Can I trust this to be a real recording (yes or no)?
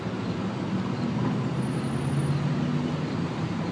yes